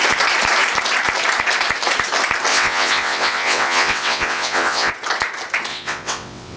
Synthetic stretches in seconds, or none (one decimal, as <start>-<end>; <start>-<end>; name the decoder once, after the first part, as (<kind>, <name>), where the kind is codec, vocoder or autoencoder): 2.5-4.9 (vocoder, WaveNeXt); 5.7-6.6